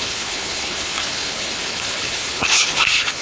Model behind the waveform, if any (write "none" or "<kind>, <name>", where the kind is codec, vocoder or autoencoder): codec, HILCodec